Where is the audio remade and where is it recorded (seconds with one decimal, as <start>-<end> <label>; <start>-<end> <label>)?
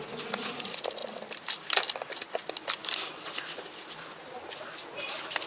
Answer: 0.0-5.5 recorded